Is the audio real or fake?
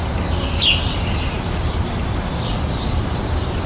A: real